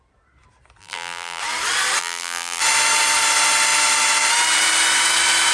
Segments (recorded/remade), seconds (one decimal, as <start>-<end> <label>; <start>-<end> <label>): 0.0-0.8 recorded; 0.8-1.4 remade; 1.4-2.0 recorded; 2.0-2.6 remade; 2.6-5.5 recorded